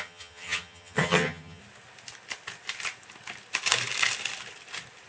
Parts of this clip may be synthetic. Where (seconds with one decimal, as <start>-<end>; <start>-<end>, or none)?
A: 0.0-1.6